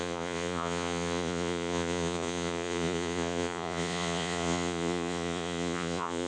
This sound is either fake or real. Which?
fake